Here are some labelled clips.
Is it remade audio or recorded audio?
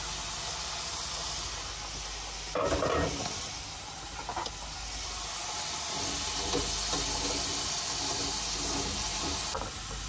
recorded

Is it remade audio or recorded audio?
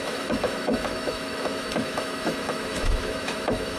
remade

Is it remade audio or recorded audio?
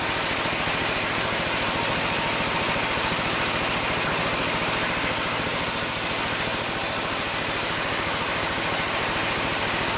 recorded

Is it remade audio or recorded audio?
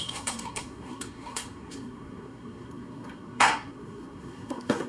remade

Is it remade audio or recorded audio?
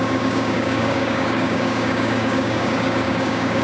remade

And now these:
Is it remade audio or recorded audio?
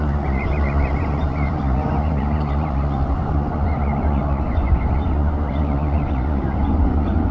remade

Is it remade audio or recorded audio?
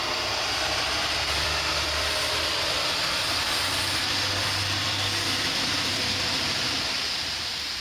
remade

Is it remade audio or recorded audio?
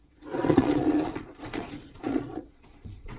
remade